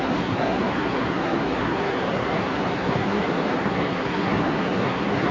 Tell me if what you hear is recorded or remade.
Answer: remade